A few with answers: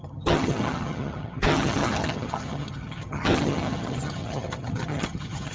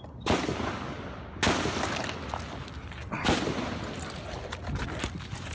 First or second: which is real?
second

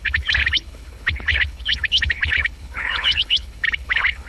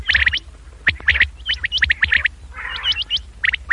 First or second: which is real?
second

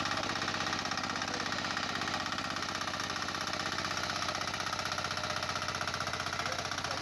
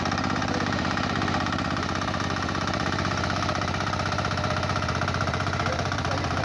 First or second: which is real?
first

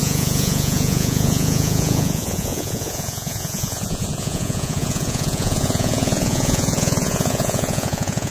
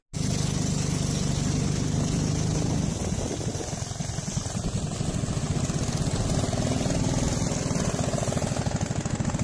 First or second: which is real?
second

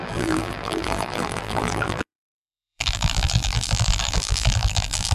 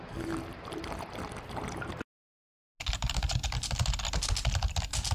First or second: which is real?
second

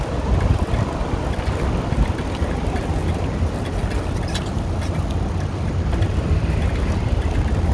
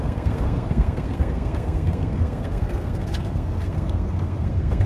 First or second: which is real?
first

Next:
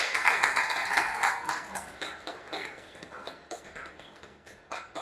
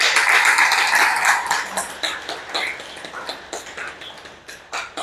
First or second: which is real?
second